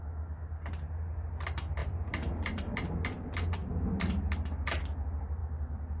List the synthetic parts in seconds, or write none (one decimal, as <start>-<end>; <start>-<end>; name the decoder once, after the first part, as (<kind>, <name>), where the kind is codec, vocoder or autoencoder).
1.8-2.9 (vocoder, BigVGAN v2)